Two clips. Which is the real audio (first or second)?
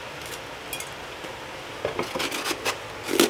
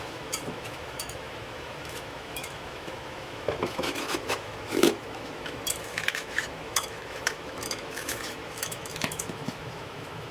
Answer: first